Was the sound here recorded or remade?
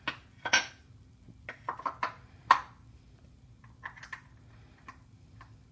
recorded